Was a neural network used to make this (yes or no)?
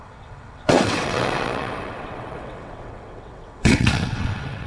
yes